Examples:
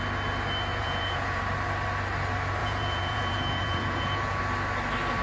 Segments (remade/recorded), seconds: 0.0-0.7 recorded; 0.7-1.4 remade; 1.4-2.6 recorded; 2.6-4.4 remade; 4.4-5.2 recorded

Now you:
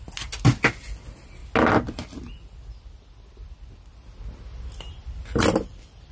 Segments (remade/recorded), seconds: 0.0-6.1 recorded

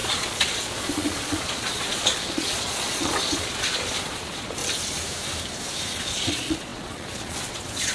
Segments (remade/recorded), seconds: 0.0-4.6 remade; 4.6-6.0 recorded; 6.0-7.9 remade

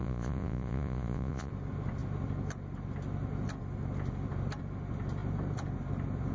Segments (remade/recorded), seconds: 0.0-1.5 remade; 1.5-6.3 recorded

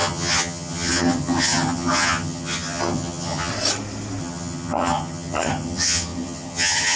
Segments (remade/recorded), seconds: 0.0-3.5 remade; 3.5-4.2 recorded; 4.2-7.0 remade

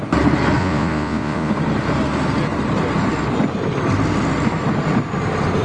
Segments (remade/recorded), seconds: 0.0-0.6 recorded; 0.6-1.5 remade; 1.5-5.6 recorded

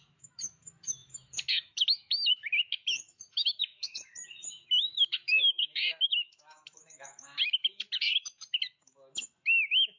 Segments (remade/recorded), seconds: 0.0-10.0 remade

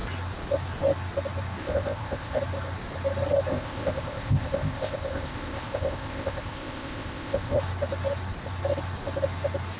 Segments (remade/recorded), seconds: 0.0-1.6 recorded; 1.6-2.4 remade; 2.4-3.5 recorded; 3.5-7.6 remade; 7.6-9.8 recorded